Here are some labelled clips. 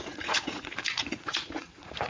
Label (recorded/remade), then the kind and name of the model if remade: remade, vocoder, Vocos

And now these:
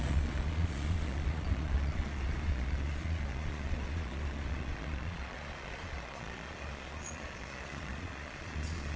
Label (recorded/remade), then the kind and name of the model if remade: remade, vocoder, Vocos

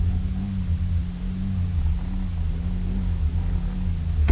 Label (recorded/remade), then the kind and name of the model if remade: recorded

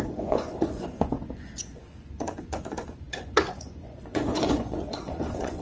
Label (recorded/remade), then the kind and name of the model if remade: remade, vocoder, Vocos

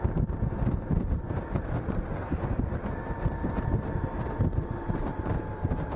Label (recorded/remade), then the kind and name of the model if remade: remade, vocoder, BigVGAN v2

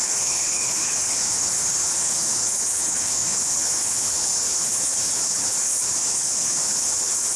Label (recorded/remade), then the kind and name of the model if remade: remade, codec, HILCodec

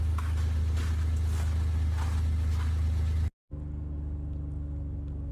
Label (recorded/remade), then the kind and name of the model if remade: recorded